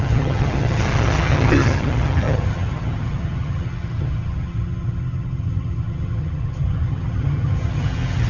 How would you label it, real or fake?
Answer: fake